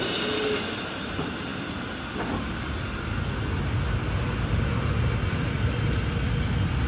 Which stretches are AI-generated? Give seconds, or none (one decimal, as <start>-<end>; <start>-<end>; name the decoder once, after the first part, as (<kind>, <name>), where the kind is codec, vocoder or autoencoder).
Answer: none